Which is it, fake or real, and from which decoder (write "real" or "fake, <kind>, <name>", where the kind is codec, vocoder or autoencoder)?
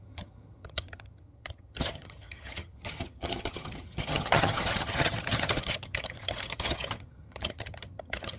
fake, vocoder, HiFi-GAN